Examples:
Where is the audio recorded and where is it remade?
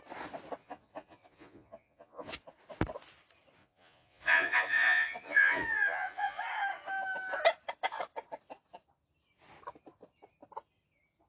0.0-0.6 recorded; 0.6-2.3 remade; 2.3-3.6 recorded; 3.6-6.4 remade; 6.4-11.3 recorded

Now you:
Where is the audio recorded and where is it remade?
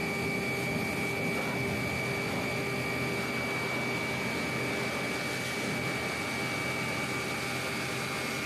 0.0-8.5 recorded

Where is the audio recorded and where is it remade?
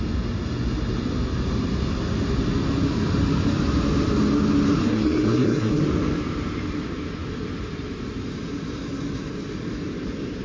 0.0-4.8 recorded; 4.8-5.8 remade; 5.8-10.4 recorded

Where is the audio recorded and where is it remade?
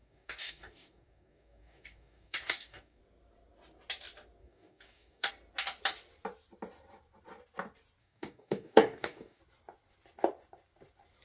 0.0-3.0 remade; 3.0-4.4 recorded; 4.4-5.3 remade; 5.3-8.0 recorded; 8.0-9.4 remade; 9.4-11.2 recorded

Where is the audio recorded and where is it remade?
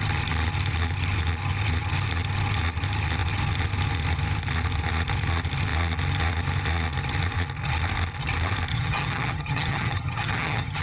0.0-8.7 recorded; 8.7-10.8 remade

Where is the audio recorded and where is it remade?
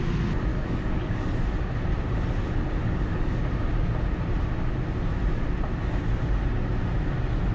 0.0-0.5 recorded; 0.5-1.3 remade; 1.3-2.8 recorded; 2.8-3.4 remade; 3.4-7.5 recorded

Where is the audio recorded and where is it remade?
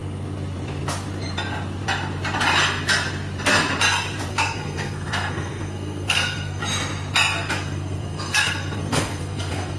0.0-4.3 recorded; 4.3-6.6 remade; 6.6-7.5 recorded; 7.5-9.8 remade